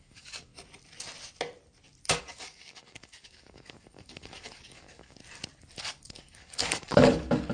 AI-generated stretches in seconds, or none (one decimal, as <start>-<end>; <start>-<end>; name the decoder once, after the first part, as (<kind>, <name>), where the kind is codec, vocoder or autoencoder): 0.0-0.5 (codec, DAC); 2.2-5.2; 5.8-7.5